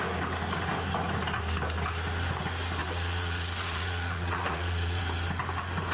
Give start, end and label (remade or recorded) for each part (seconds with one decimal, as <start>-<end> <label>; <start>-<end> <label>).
0.0-2.8 recorded; 2.8-5.0 remade; 5.0-5.9 recorded